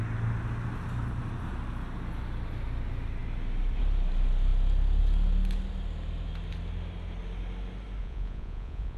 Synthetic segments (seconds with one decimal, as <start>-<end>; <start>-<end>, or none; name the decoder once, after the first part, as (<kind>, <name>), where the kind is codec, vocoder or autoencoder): 8.0-9.0 (vocoder, Vocos)